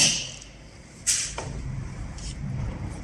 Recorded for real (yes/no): no